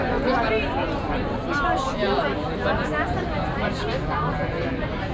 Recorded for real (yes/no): yes